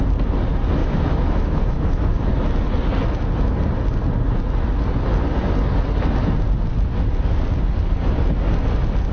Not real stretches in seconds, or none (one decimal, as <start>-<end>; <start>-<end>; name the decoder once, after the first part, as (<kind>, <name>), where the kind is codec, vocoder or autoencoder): 0.8-2.3 (autoencoder, DAC-VAE)